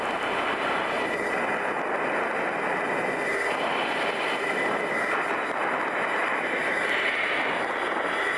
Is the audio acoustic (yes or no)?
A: yes